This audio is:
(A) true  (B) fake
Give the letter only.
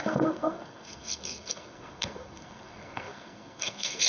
B